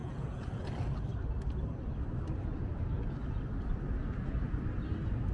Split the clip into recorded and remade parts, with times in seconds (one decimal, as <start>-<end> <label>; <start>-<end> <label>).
0.0-0.7 remade; 0.7-5.3 recorded